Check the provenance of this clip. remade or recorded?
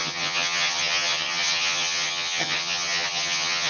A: remade